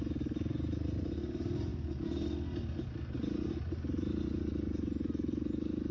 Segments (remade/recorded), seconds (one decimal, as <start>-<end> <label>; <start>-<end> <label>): 0.0-5.9 recorded